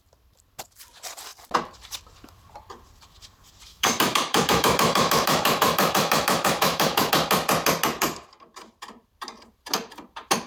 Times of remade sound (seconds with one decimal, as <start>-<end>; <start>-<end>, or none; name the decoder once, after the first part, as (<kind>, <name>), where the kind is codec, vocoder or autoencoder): 3.7-7.1 (autoencoder, DAC-VAE)